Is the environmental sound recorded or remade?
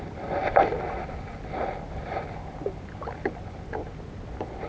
recorded